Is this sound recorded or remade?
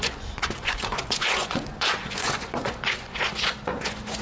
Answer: remade